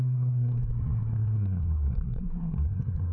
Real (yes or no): no